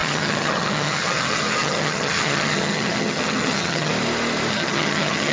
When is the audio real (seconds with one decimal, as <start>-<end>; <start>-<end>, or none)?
3.9-4.5

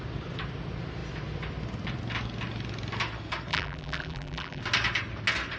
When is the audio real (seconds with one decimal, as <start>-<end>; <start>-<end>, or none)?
0.0-3.5; 4.6-5.6

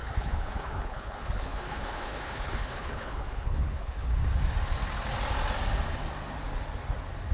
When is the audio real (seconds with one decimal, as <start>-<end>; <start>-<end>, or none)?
4.1-7.3

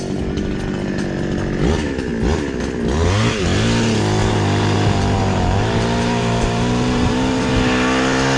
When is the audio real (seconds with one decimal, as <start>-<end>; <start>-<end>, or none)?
0.0-4.2; 7.5-8.4

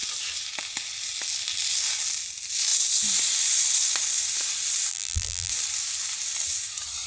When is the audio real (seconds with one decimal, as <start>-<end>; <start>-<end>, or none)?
0.0-4.9; 5.5-7.1